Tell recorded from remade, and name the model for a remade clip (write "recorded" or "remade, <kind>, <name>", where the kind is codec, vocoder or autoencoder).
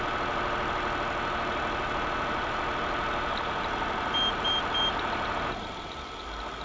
recorded